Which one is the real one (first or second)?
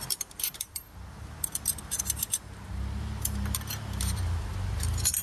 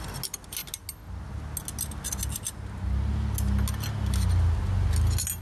second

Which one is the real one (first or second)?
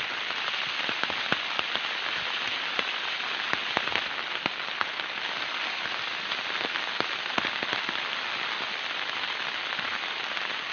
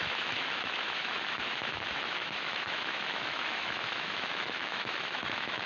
first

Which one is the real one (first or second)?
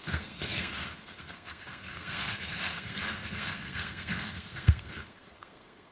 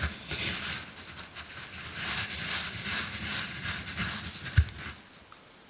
second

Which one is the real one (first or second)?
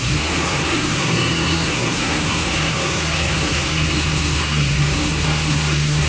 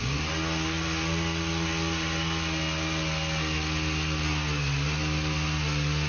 second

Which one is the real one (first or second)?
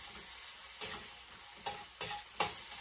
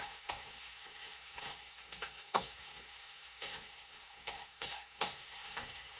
first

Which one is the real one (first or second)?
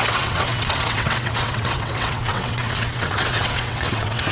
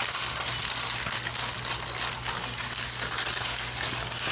second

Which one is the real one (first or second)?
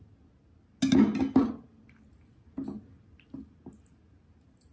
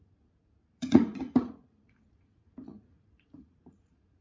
first